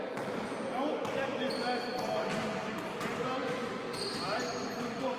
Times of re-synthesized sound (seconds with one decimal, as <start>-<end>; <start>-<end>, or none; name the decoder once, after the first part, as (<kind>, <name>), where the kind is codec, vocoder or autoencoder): none